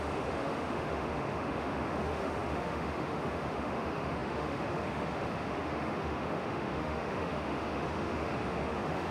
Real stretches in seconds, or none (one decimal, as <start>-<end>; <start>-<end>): none